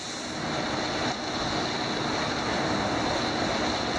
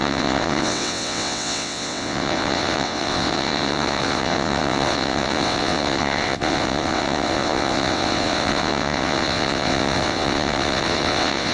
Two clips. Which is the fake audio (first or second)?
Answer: second